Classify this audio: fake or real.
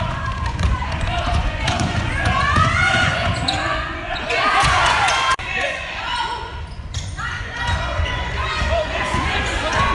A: fake